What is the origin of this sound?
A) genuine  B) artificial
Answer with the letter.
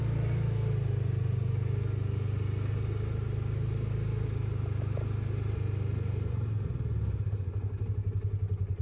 A